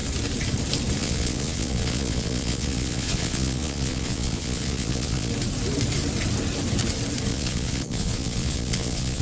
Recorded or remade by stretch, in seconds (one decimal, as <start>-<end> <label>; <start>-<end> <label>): 0.0-1.0 recorded; 1.0-5.3 remade; 5.3-7.3 recorded; 7.3-9.2 remade

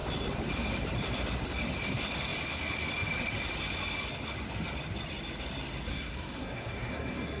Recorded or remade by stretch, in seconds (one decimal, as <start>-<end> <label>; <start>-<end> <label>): 0.0-5.9 recorded; 5.9-7.4 remade

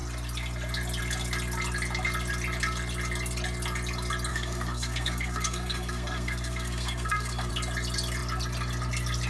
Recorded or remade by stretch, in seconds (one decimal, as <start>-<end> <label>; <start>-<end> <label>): 0.0-4.3 recorded; 4.3-7.5 remade; 7.5-9.3 recorded

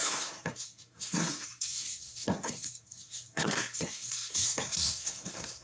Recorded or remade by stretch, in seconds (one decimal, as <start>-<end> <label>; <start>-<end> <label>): 0.0-5.6 remade

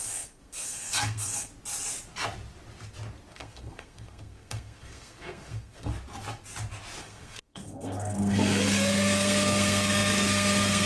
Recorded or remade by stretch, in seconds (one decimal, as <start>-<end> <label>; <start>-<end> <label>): 0.0-1.5 remade; 1.5-3.3 recorded; 3.3-5.9 remade; 5.9-7.0 recorded; 7.0-10.9 remade

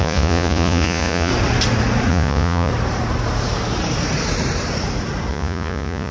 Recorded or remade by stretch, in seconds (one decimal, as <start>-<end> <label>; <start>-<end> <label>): 0.0-1.3 remade; 1.3-2.1 recorded; 2.1-2.7 remade; 2.7-5.3 recorded; 5.3-6.1 remade